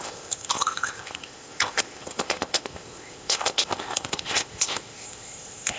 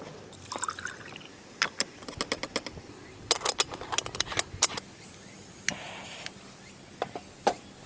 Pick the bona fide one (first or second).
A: second